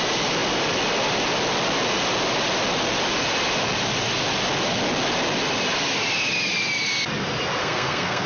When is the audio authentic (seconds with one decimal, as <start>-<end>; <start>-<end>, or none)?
0.0-7.6